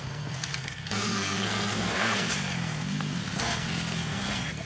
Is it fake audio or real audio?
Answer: fake